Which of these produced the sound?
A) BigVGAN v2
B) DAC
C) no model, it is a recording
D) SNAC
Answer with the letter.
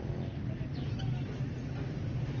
C